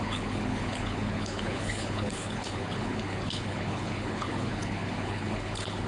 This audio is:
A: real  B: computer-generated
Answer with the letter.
B